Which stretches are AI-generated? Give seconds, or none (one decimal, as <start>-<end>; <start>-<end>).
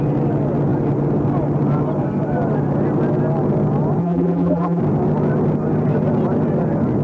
4.0-4.8